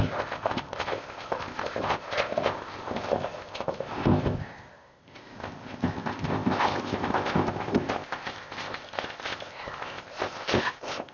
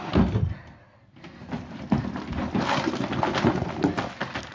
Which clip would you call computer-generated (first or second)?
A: first